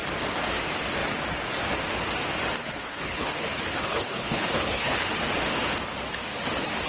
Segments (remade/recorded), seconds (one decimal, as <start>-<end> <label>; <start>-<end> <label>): 0.0-2.6 recorded; 2.6-5.1 remade; 5.1-6.9 recorded